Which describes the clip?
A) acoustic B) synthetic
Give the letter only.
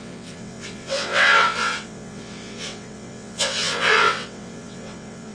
B